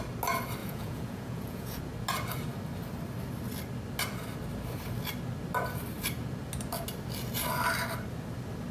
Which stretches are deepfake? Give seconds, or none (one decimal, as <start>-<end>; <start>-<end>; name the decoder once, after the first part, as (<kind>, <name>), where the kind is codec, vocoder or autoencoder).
0.6-1.8 (vocoder, Vocos)